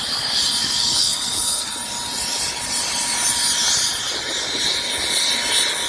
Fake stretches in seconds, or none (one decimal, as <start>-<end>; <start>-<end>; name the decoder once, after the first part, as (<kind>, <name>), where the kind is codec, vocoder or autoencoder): 0.6-1.7 (codec, SNAC)